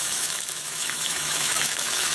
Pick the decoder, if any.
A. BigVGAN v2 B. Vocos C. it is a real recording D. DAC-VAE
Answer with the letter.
D